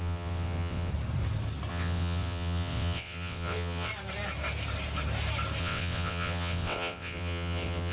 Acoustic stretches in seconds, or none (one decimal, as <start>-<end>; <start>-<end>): 0.9-1.7; 3.9-5.6